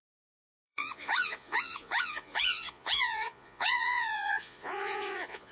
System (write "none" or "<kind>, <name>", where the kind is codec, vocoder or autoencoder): vocoder, Vocos